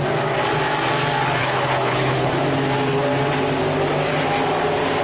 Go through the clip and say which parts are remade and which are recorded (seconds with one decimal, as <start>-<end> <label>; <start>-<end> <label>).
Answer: 0.0-1.4 recorded; 1.4-2.3 remade; 2.3-5.0 recorded